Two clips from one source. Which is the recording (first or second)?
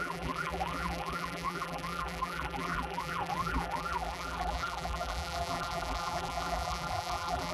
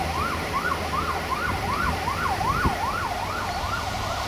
second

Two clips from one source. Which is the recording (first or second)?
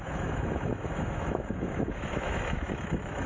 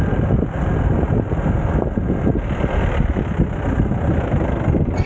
second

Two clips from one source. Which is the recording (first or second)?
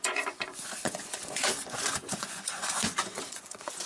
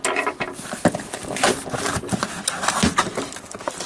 second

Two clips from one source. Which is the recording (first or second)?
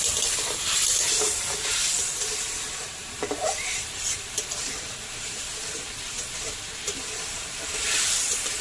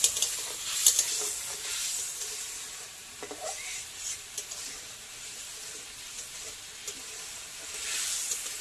second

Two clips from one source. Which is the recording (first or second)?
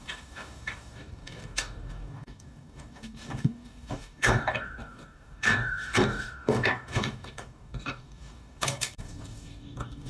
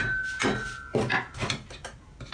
second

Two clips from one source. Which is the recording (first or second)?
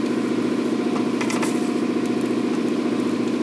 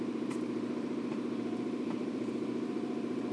first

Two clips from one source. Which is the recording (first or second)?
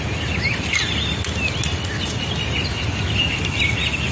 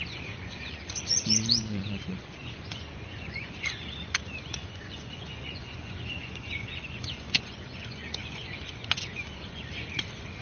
first